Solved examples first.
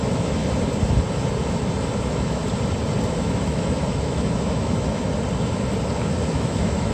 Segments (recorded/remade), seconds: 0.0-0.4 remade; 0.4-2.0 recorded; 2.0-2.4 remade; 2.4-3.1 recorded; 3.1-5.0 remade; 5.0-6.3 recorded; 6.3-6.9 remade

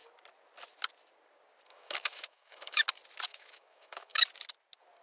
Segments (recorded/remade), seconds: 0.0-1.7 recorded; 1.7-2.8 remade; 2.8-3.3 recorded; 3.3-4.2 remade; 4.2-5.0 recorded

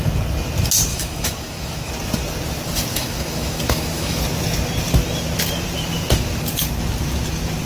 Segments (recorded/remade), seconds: 0.0-0.9 recorded; 0.9-1.9 remade; 1.9-2.9 recorded; 2.9-4.2 remade; 4.2-7.7 recorded

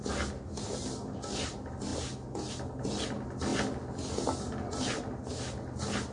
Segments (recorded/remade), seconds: 0.0-6.1 recorded

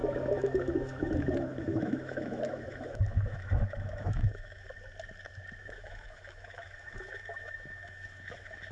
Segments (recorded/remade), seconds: 0.0-4.7 remade; 4.7-5.6 recorded; 5.6-8.7 remade

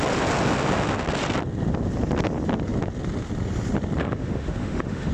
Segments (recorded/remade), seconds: 0.0-4.0 recorded; 4.0-5.1 remade

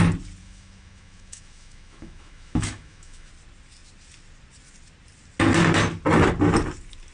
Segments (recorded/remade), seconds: 0.0-0.4 recorded; 0.4-3.3 remade; 3.3-7.1 recorded

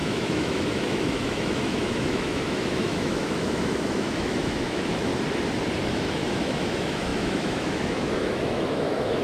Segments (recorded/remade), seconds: 0.0-5.1 remade; 5.1-5.9 recorded; 5.9-9.2 remade